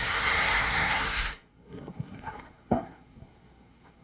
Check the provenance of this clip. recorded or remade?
remade